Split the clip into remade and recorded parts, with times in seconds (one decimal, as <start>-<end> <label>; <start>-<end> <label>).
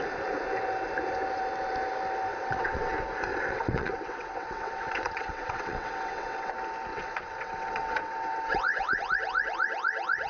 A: 0.0-2.3 recorded; 2.3-2.9 remade; 2.9-3.3 recorded; 3.3-6.5 remade; 6.5-6.9 recorded; 6.9-9.0 remade; 9.0-10.3 recorded